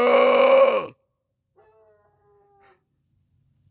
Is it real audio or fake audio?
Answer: real